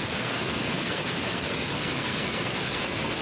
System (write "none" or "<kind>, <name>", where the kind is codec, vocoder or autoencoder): codec, SNAC